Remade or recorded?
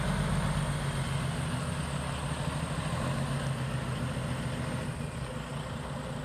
recorded